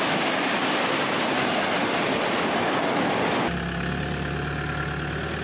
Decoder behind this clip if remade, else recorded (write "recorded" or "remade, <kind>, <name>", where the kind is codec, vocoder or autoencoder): recorded